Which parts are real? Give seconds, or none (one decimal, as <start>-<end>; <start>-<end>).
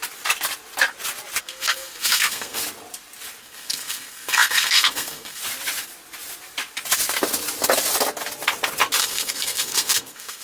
0.0-1.4; 2.6-3.4; 5.4-9.0